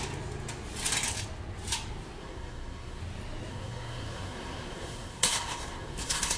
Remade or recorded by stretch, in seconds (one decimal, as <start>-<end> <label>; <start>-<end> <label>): 0.0-2.2 recorded; 2.2-3.0 remade; 3.0-3.5 recorded; 3.5-6.4 remade